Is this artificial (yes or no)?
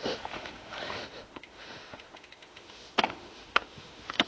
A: yes